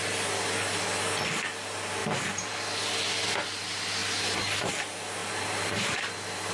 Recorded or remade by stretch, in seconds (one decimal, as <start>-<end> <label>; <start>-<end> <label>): 0.0-2.0 recorded; 2.0-2.5 remade; 2.5-4.0 recorded; 4.0-4.7 remade; 4.7-5.2 recorded; 5.2-6.5 remade